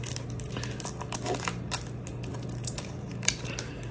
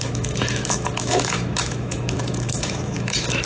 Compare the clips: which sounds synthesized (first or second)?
second